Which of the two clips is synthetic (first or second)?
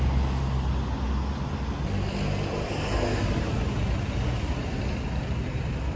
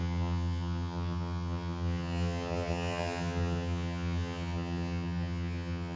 second